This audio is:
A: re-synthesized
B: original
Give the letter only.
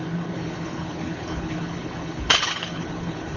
A